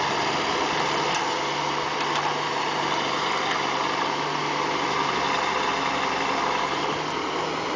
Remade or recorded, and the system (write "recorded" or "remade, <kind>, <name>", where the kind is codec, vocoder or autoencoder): recorded